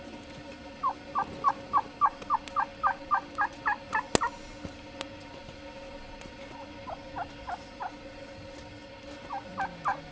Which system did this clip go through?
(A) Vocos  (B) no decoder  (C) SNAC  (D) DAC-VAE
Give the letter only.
B